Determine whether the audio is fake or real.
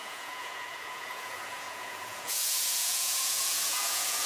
fake